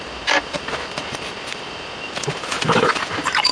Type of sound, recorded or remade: recorded